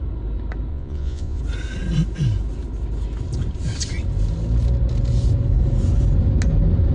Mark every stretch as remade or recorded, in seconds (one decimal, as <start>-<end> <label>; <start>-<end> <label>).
0.0-0.7 recorded; 0.7-1.4 remade; 1.4-6.9 recorded